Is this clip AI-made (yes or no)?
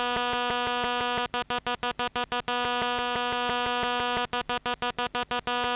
no